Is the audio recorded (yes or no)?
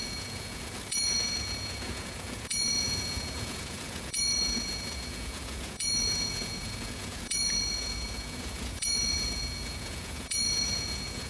no